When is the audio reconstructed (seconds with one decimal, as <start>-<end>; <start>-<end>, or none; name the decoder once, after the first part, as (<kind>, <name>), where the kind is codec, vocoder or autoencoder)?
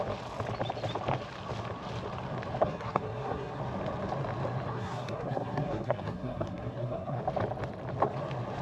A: 2.6-3.6 (codec, SNAC); 4.7-7.2